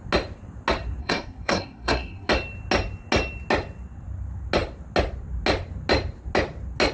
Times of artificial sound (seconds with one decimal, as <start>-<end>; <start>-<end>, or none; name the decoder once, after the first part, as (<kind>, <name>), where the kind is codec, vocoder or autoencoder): 1.0-2.3 (codec, SNAC)